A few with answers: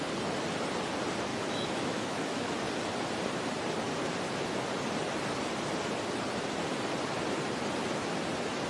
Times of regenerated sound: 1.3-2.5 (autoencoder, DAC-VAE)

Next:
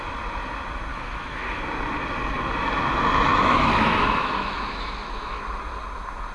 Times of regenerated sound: 0.9-1.6 (autoencoder, DAC-VAE); 3.3-5.4